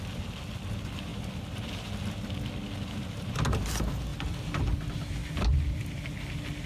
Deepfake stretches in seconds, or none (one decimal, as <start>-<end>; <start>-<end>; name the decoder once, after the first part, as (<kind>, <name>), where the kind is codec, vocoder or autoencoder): 4.1-4.6 (vocoder, BigVGAN v2)